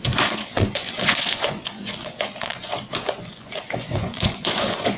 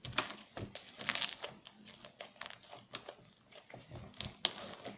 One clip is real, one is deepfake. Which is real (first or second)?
second